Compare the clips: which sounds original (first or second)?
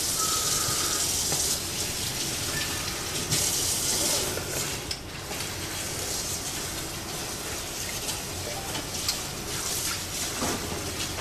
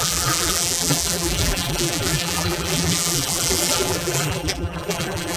first